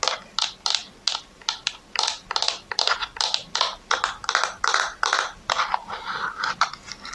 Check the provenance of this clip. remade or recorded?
recorded